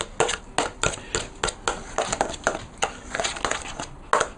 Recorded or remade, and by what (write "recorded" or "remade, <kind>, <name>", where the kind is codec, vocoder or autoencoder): recorded